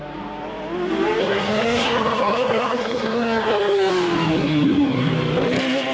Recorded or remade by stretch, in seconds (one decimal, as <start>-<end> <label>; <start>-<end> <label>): 0.0-1.2 recorded; 1.2-3.9 remade; 3.9-4.3 recorded; 4.3-5.1 remade; 5.1-5.9 recorded